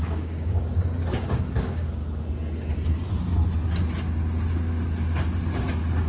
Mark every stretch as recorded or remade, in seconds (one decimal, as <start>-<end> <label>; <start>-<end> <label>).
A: 0.0-2.0 remade; 2.0-6.1 recorded